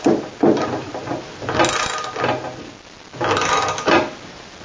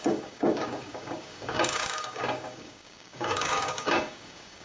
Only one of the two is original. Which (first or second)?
first